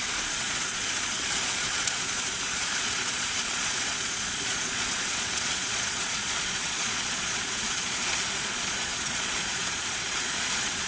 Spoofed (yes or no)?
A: yes